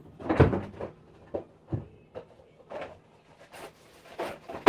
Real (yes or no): yes